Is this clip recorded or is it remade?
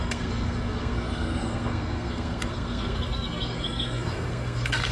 remade